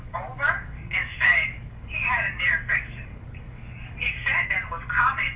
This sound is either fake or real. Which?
fake